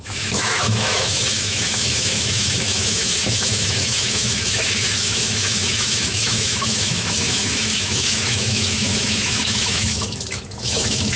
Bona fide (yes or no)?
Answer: no